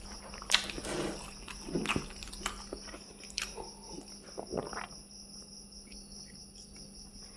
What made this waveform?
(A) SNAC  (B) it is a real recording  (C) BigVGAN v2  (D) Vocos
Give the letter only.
B